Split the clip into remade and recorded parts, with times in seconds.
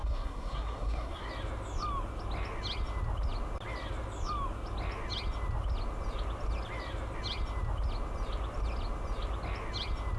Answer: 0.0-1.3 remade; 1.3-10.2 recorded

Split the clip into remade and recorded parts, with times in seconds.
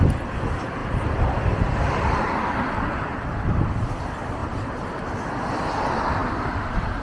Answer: 0.0-0.8 recorded; 0.8-4.0 remade; 4.0-7.0 recorded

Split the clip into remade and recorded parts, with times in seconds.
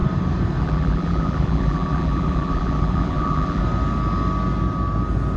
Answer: 0.0-0.6 recorded; 0.6-3.6 remade; 3.6-5.4 recorded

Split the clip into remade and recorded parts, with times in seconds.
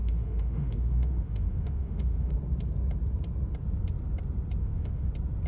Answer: 0.0-2.3 remade; 2.3-4.6 recorded; 4.6-5.1 remade; 5.1-5.5 recorded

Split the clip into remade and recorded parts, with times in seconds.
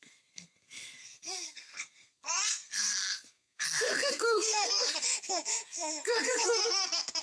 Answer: 0.0-7.2 remade